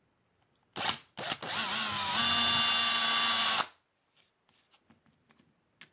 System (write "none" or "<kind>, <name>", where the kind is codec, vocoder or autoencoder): none